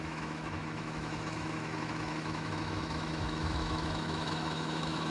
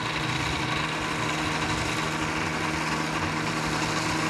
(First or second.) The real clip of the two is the second